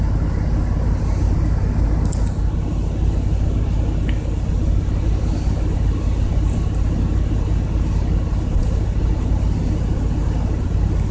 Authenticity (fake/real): real